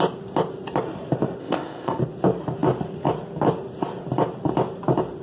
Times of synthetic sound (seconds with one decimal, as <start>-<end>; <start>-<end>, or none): 1.4-2.0